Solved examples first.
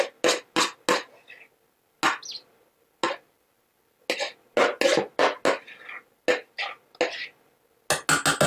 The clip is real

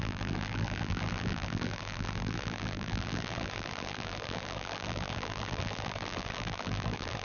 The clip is fake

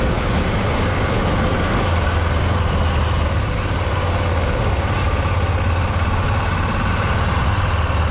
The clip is real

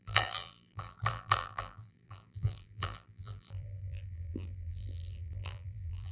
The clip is fake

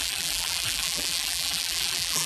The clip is fake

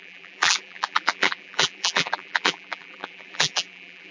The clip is fake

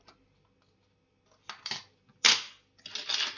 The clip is real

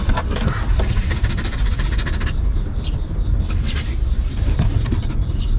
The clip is fake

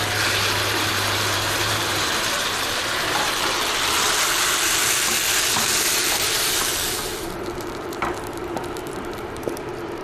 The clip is fake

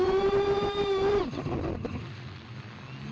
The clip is real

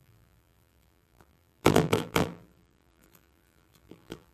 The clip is fake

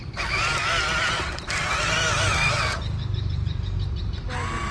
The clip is real